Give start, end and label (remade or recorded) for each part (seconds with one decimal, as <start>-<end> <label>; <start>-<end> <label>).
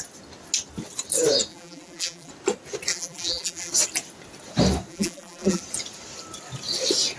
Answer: 0.0-1.5 recorded; 1.5-2.3 remade; 2.3-2.9 recorded; 2.9-3.7 remade; 3.7-4.9 recorded; 4.9-5.6 remade; 5.6-7.2 recorded